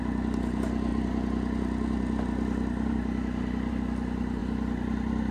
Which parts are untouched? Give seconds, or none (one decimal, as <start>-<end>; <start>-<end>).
0.0-5.3